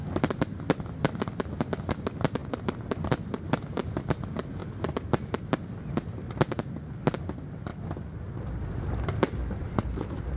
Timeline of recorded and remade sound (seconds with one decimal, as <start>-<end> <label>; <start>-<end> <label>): 0.0-2.4 recorded; 2.4-3.2 remade; 3.2-10.4 recorded